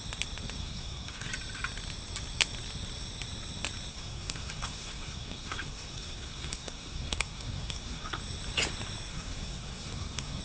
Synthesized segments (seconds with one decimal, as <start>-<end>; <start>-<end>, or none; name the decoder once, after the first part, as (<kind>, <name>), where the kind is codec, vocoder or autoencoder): 0.6-1.3 (codec, SNAC); 3.9-8.2; 9.1-10.4